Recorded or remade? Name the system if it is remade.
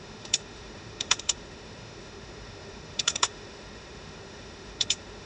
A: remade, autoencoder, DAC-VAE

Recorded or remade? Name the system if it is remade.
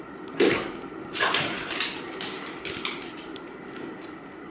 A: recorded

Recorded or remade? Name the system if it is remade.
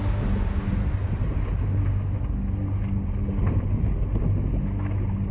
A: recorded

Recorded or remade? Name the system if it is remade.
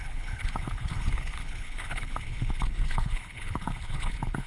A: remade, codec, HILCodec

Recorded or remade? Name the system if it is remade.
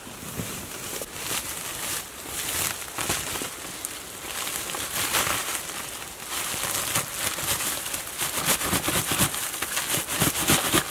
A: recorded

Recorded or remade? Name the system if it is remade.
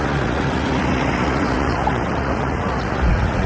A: remade, vocoder, Vocos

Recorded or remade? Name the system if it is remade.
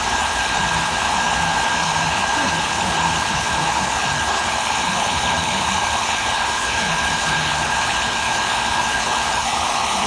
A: remade, codec, HILCodec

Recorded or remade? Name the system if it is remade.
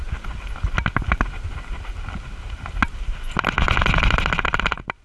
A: recorded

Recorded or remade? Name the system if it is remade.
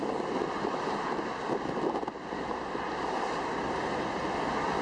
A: recorded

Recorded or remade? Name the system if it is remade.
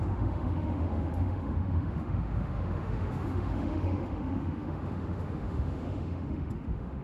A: remade, autoencoder, DAC-VAE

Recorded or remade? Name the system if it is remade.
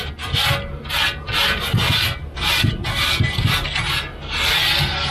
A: recorded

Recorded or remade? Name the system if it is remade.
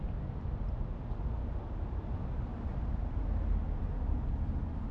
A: recorded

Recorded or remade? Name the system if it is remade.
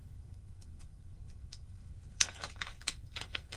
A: remade, codec, SNAC